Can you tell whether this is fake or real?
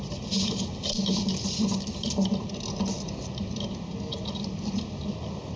real